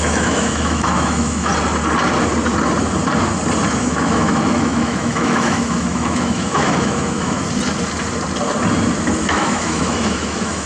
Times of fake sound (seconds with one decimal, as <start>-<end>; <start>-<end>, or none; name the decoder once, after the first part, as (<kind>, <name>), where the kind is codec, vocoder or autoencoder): 0.0-1.5 (autoencoder, DAC-VAE); 3.7-7.4; 9.3-10.7